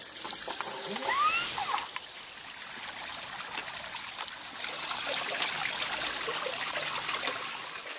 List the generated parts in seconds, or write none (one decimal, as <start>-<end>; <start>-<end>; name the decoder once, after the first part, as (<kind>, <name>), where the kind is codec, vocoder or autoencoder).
none